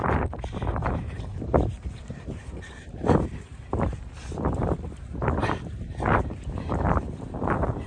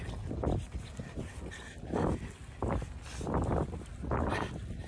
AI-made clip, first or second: first